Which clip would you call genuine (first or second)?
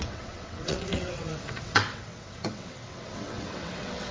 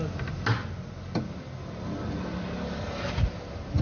second